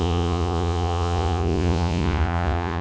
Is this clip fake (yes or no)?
yes